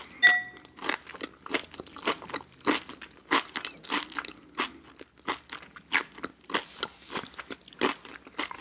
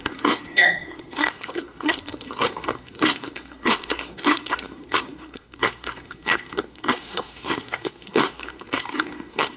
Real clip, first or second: first